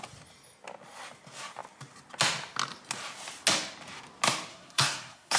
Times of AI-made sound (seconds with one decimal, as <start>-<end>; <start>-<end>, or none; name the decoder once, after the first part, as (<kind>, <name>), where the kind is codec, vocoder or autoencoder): 4.5-5.4 (codec, SNAC)